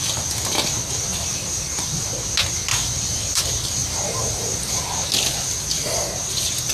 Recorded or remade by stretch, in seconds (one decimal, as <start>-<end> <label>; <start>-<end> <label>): 0.0-1.1 recorded; 1.1-2.0 remade; 2.0-2.7 recorded; 2.7-3.4 remade; 3.4-3.8 recorded; 3.8-4.9 remade; 4.9-6.7 recorded